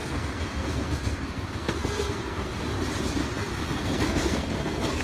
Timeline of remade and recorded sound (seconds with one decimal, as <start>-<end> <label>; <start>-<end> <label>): 0.0-2.5 remade; 2.5-3.2 recorded; 3.2-5.0 remade